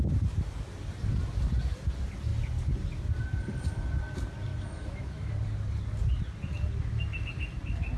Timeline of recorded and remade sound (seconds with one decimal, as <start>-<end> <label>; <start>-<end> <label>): 0.0-4.5 recorded; 4.5-5.3 remade; 5.3-8.0 recorded